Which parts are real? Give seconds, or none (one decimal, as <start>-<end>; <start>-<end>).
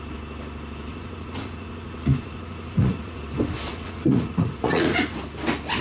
0.0-0.9; 3.2-3.7; 5.2-5.8